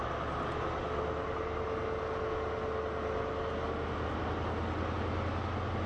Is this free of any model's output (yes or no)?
yes